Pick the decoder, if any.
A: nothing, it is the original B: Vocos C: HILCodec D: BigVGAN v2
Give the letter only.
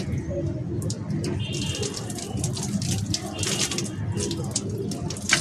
A